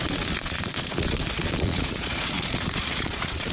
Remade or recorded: remade